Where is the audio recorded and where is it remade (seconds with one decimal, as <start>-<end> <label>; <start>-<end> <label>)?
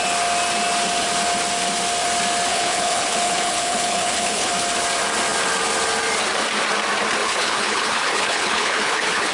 0.0-2.5 recorded; 2.5-4.5 remade; 4.5-7.2 recorded; 7.2-9.3 remade